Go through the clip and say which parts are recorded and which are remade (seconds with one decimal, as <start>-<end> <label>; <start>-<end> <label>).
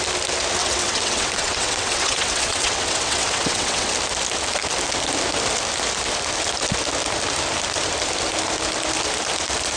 0.0-0.6 recorded; 0.6-3.9 remade; 3.9-9.8 recorded